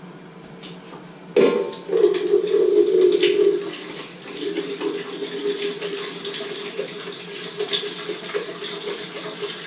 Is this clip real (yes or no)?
yes